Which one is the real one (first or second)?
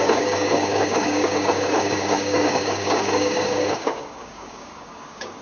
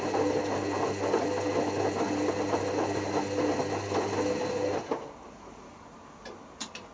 second